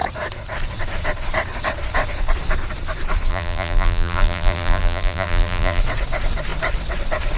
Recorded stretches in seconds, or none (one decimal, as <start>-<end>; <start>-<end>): 0.0-3.3; 5.8-7.4